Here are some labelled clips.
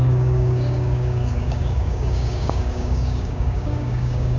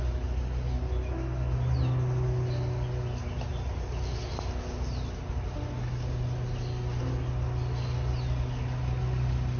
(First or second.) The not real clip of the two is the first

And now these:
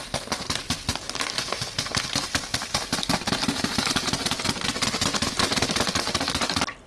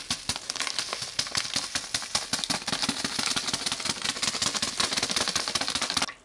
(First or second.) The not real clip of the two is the first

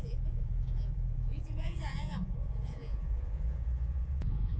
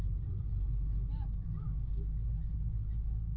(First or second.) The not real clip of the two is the first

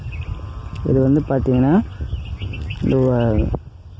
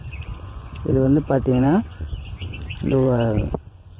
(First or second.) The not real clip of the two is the second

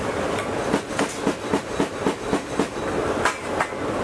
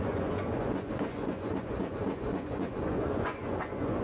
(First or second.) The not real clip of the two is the second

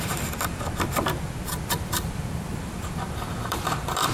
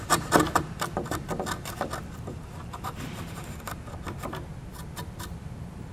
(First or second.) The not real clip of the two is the first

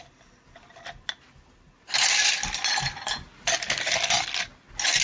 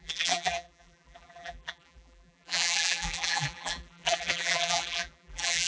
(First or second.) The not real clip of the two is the second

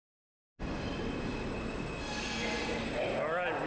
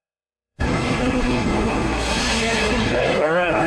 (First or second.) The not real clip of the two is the second